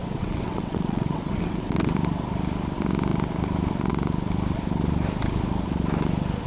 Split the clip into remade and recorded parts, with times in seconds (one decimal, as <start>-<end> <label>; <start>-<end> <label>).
0.0-1.9 remade; 1.9-6.5 recorded